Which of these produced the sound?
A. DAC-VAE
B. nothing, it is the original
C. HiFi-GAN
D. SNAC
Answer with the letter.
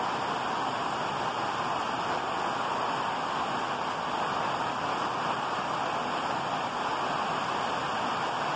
B